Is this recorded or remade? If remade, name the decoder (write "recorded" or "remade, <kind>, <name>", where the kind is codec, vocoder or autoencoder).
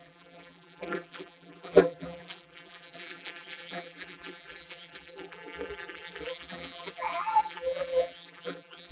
remade, vocoder, BigVGAN v2